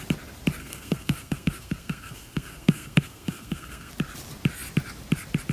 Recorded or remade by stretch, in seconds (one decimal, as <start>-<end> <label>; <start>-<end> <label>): 0.0-0.6 recorded; 0.6-3.9 remade; 3.9-5.5 recorded